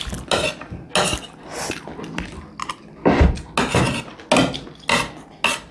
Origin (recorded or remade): recorded